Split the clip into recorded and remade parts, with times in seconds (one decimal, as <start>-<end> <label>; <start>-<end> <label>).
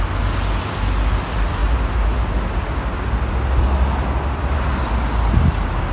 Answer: 0.0-5.9 recorded